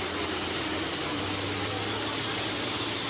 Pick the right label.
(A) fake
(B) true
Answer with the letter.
B